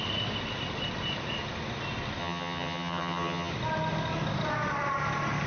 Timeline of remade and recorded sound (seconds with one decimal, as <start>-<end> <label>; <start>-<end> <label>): 0.0-2.2 recorded; 2.2-3.5 remade; 3.5-5.5 recorded